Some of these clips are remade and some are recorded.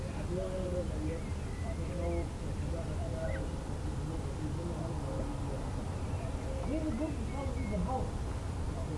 recorded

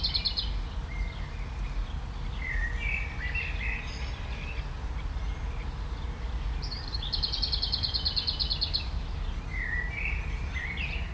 recorded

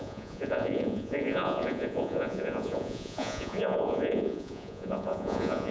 remade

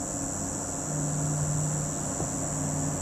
recorded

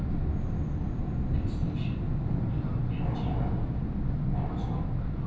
recorded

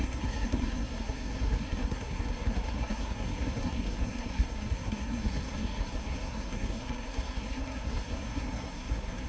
remade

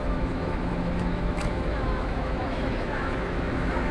remade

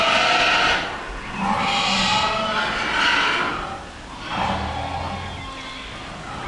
recorded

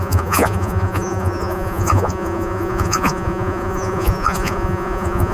remade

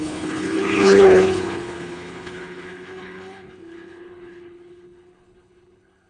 remade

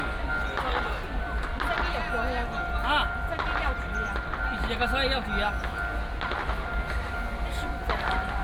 recorded